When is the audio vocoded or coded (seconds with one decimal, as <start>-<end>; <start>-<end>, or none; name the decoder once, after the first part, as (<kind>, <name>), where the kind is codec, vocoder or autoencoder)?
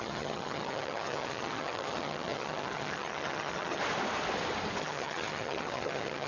0.0-3.8 (vocoder, HiFi-GAN); 4.8-6.3